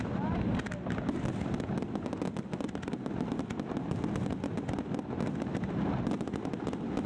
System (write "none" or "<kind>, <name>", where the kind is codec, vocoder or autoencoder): none